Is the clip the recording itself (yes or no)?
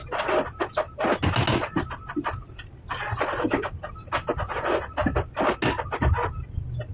yes